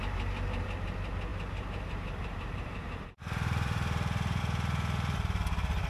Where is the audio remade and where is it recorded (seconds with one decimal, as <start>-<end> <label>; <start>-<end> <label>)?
0.0-1.3 recorded; 1.3-4.4 remade; 4.4-5.9 recorded